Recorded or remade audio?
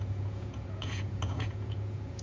remade